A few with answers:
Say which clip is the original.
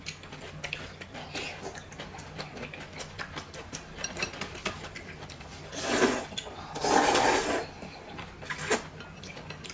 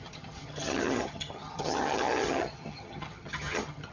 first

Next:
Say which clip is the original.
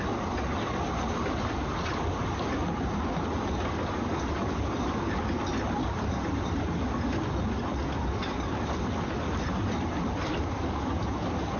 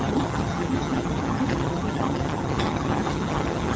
first